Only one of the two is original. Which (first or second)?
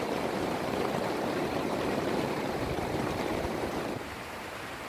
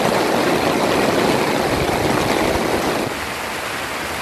second